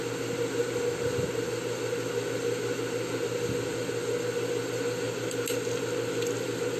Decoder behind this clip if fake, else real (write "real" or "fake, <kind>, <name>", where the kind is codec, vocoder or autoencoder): real